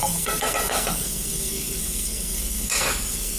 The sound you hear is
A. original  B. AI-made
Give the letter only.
B